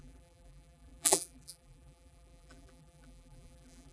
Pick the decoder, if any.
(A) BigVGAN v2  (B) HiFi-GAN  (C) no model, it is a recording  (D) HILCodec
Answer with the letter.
A